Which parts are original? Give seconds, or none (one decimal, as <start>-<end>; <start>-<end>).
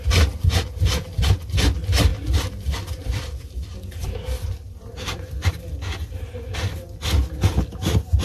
0.0-2.1; 5.5-8.2